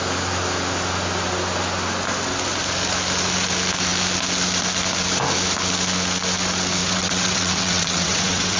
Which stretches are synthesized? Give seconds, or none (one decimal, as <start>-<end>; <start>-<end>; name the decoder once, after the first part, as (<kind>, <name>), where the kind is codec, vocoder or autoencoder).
6.8-8.6 (vocoder, WaveNeXt)